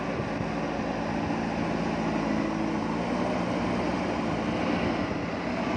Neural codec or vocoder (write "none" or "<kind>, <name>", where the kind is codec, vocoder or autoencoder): none